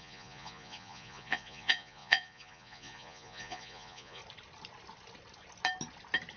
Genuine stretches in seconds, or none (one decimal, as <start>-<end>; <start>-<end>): 4.2-6.4